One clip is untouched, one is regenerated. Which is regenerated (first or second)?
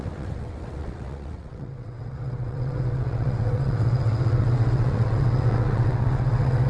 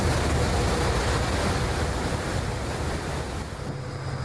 first